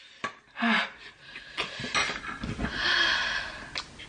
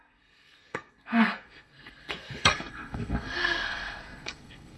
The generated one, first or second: second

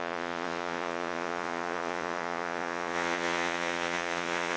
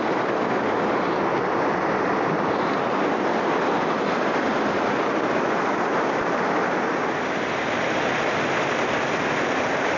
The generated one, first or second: first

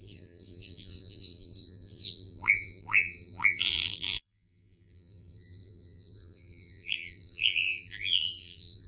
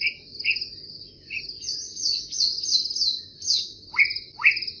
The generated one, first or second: first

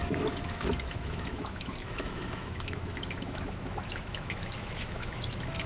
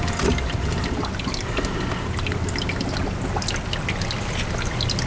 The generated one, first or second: first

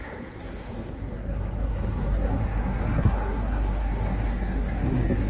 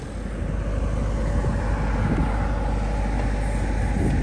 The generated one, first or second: first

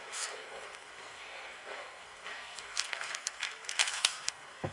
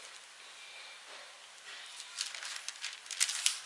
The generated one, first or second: first